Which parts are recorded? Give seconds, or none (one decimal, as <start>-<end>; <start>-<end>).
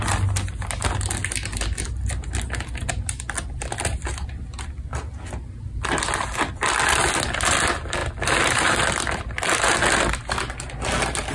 0.0-11.3